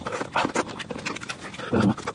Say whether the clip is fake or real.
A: real